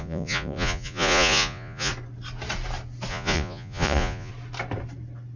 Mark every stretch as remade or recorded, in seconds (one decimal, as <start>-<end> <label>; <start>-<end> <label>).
0.0-1.9 remade; 1.9-3.1 recorded; 3.1-4.3 remade; 4.3-5.4 recorded